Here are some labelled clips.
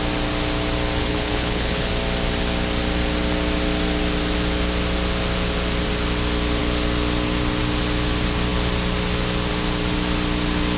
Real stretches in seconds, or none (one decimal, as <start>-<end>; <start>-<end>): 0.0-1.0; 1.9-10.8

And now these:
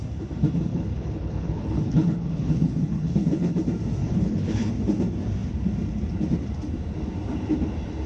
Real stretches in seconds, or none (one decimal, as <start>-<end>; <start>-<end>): 0.0-0.7; 3.5-4.0; 4.7-8.1

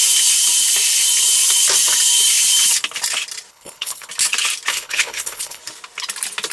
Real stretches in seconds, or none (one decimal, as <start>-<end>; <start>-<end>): 0.0-3.5; 4.1-4.7; 5.6-6.5

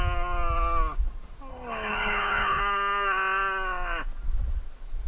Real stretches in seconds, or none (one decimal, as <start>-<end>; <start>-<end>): 0.0-1.5; 2.6-5.1